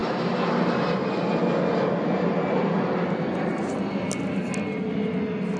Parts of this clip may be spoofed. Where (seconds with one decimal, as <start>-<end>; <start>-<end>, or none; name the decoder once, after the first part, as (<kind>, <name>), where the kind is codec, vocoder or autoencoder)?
none